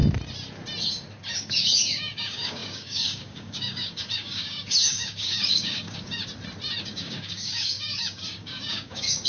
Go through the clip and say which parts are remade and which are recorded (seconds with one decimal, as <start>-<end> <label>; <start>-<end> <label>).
0.0-1.4 recorded; 1.4-6.2 remade; 6.2-6.8 recorded; 6.8-9.3 remade